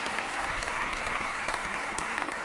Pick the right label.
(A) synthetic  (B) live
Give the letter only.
A